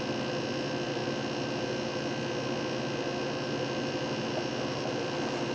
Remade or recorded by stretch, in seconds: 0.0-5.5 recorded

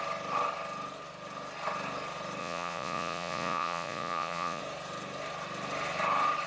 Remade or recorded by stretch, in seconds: 0.0-2.4 recorded; 2.4-4.6 remade; 4.6-6.5 recorded

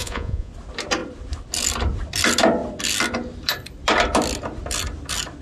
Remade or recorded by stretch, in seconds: 0.0-0.5 remade; 0.5-5.4 recorded

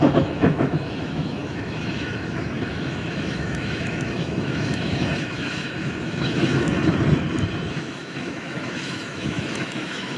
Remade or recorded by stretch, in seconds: 0.0-6.8 remade; 6.8-7.7 recorded; 7.7-10.2 remade

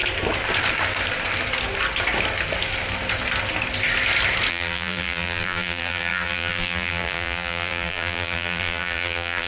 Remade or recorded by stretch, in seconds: 0.0-4.5 recorded; 4.5-9.5 remade

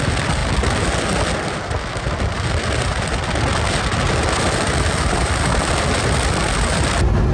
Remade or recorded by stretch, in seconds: 0.0-7.3 recorded

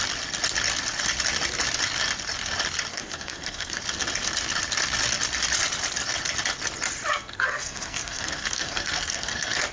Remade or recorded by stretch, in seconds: 0.0-2.9 recorded; 2.9-3.8 remade; 3.8-7.1 recorded; 7.1-9.7 remade

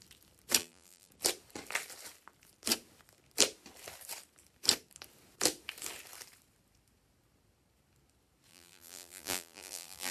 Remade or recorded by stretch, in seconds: 0.0-0.6 recorded; 0.6-1.1 remade; 1.1-8.5 recorded; 8.5-10.1 remade